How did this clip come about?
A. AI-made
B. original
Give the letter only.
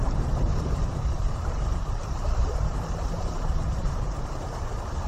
A